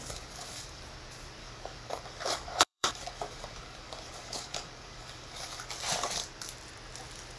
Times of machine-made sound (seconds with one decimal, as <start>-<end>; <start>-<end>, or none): 0.0-0.8; 1.4-5.7